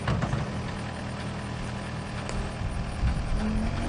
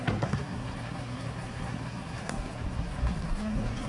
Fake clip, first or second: second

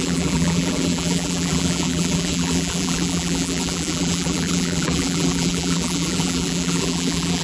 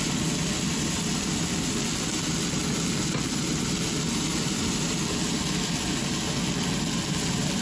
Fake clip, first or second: first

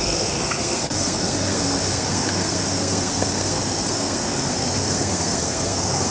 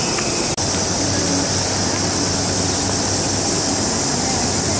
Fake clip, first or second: first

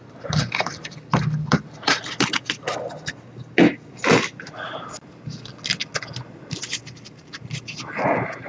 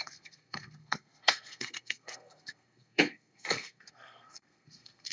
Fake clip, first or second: second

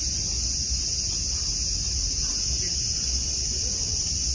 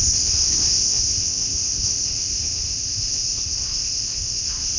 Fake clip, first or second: second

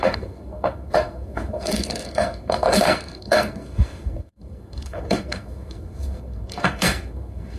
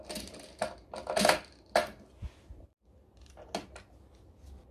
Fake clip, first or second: first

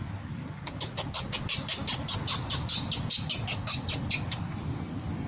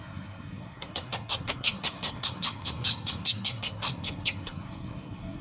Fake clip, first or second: second